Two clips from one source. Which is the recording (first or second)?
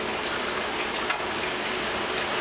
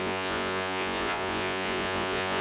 first